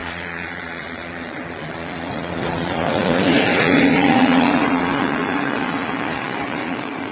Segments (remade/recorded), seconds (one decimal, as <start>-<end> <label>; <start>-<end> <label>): 0.0-7.1 remade